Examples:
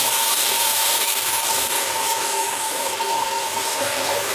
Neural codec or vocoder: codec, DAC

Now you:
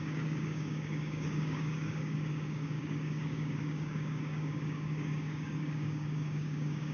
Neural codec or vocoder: codec, DAC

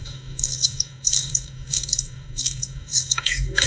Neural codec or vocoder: codec, DAC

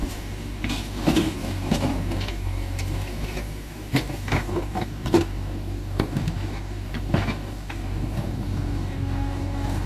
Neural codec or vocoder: codec, DAC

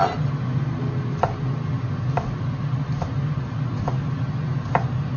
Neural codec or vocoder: none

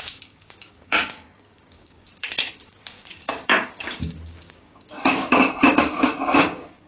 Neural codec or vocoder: codec, DAC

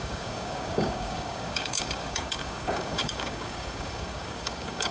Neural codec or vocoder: codec, DAC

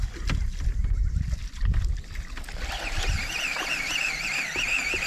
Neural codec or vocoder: none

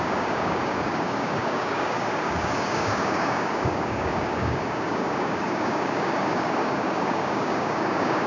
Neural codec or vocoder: codec, DAC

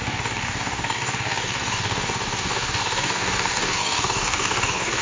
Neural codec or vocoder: codec, DAC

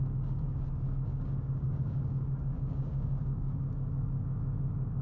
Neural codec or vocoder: codec, DAC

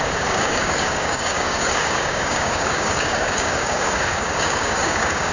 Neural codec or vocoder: codec, DAC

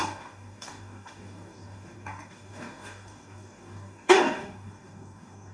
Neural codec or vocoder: codec, DAC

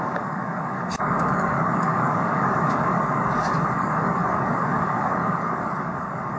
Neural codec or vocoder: codec, DAC